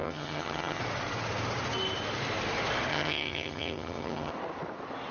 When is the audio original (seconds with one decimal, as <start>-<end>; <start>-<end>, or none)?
0.8-2.9; 4.3-5.1